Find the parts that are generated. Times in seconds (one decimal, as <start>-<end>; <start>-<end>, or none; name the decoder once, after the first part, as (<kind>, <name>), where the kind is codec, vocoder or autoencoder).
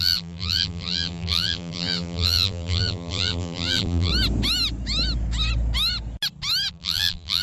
0.0-4.1 (vocoder, BigVGAN v2); 6.7-7.4